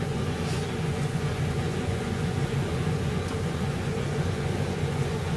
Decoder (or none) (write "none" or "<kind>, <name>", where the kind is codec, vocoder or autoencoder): vocoder, Vocos